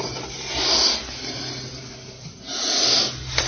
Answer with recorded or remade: recorded